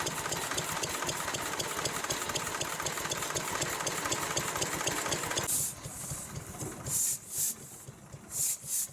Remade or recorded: recorded